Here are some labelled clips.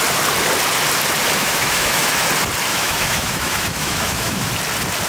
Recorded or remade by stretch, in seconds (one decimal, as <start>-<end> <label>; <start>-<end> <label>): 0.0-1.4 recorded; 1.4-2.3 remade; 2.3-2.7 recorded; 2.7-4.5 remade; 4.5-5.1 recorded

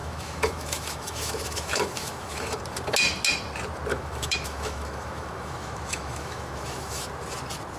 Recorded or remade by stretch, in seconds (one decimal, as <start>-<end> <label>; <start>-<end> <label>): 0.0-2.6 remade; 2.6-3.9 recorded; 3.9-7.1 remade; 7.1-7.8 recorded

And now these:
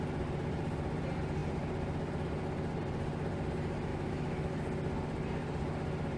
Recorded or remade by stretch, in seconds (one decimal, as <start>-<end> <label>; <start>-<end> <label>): 0.0-3.9 recorded; 3.9-4.5 remade; 4.5-6.2 recorded

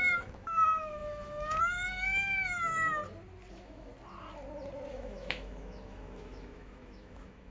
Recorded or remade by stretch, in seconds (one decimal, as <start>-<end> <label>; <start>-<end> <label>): 0.0-3.0 remade; 3.0-3.5 recorded; 3.5-3.9 remade; 3.9-4.9 recorded; 4.9-7.5 remade